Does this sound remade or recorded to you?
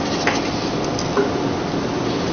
recorded